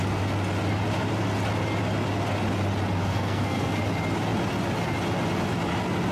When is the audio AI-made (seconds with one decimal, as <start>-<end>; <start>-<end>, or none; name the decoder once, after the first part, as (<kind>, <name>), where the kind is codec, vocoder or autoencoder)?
3.0-3.7 (codec, SNAC)